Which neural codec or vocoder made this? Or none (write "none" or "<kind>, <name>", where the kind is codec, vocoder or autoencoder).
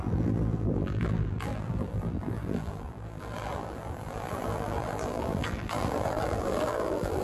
vocoder, BigVGAN v2